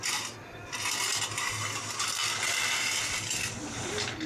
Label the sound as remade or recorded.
recorded